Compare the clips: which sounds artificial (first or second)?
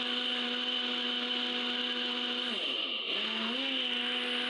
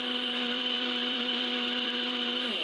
second